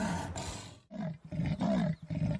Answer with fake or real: real